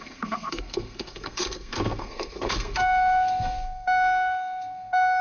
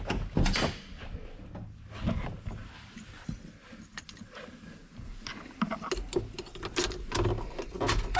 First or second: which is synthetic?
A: first